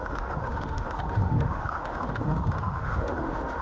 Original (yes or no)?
no